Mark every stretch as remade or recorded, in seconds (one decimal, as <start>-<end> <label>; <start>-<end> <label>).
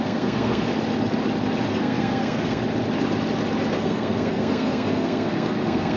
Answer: 0.0-0.7 remade; 0.7-1.7 recorded; 1.7-2.6 remade; 2.6-3.7 recorded; 3.7-6.0 remade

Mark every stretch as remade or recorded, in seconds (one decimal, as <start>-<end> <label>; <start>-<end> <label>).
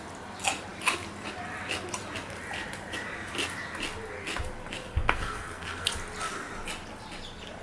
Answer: 0.0-4.9 recorded; 4.9-5.9 remade; 5.9-7.6 recorded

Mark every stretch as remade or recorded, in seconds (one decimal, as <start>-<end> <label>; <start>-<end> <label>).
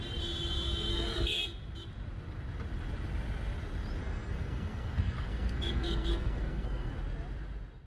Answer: 0.0-0.9 recorded; 0.9-1.4 remade; 1.4-4.0 recorded; 4.0-6.9 remade; 6.9-7.9 recorded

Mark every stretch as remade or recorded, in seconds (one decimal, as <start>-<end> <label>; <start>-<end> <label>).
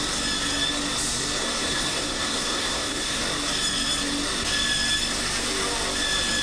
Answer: 0.0-1.4 recorded; 1.4-3.2 remade; 3.2-6.4 recorded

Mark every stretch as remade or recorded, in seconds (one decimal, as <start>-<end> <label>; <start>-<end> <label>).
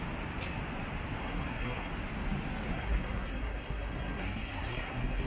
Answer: 0.0-1.2 recorded; 1.2-1.9 remade; 1.9-2.7 recorded; 2.7-5.3 remade